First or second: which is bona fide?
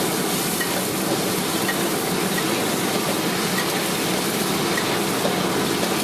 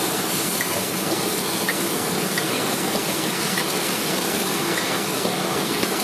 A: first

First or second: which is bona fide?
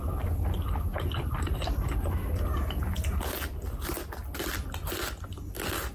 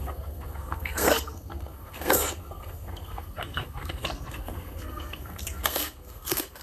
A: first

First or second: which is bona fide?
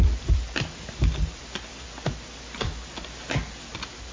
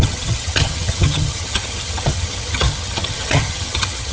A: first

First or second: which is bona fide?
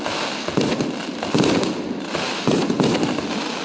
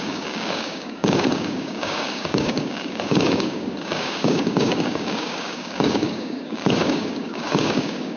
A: first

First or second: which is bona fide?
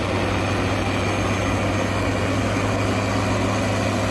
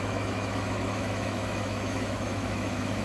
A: first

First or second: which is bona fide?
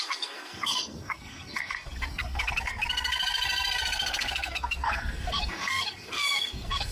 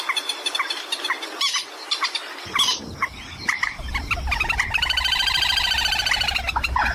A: second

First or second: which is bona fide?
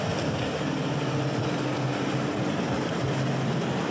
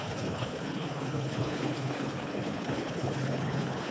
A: first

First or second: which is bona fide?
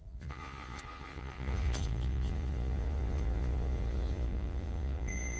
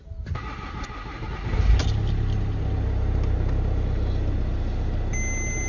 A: second